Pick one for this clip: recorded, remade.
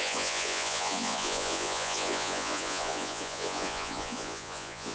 remade